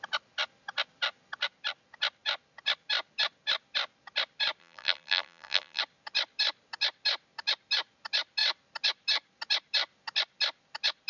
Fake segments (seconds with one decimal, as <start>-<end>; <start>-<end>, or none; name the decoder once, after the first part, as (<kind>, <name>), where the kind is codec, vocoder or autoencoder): 4.6-5.8 (vocoder, BigVGAN v2)